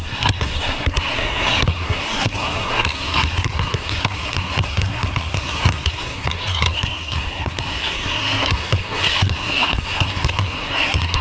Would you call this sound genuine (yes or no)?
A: no